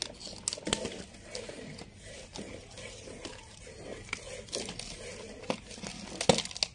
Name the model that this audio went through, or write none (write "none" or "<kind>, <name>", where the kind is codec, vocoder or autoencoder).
none